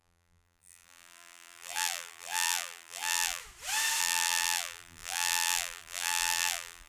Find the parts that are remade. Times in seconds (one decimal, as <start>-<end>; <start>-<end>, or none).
0.0-3.4; 4.0-6.9

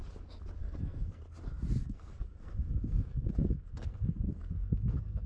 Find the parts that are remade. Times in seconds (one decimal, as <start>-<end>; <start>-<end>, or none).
0.6-1.2; 1.8-5.3

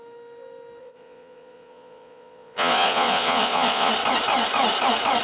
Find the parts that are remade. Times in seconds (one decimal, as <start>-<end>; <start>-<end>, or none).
0.8-3.9

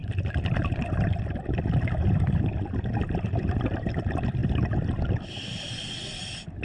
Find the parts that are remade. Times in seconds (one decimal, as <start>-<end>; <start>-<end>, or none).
0.0-4.0

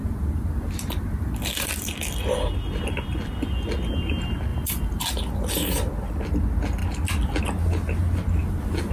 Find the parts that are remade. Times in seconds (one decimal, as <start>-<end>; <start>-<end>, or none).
0.0-1.7; 4.5-5.1; 8.4-8.9